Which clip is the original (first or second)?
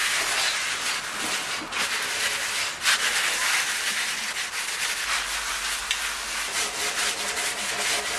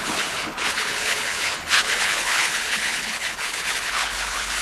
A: first